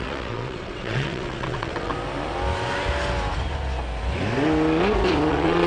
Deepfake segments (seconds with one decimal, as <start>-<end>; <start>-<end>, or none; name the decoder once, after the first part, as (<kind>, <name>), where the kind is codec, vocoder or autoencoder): 0.0-1.9 (vocoder, WaveNeXt); 5.3-5.7